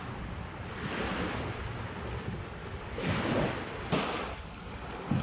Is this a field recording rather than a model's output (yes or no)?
yes